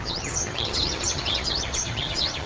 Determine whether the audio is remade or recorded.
remade